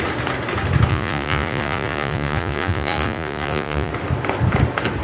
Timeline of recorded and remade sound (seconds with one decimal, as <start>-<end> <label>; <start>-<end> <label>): 0.0-0.9 recorded; 0.9-3.9 remade; 3.9-5.0 recorded